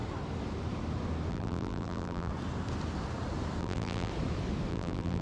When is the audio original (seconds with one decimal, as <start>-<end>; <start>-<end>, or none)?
0.0-1.3; 2.3-3.6; 4.1-4.7